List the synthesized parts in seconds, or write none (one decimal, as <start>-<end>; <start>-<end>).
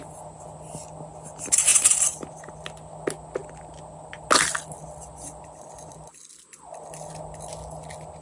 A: none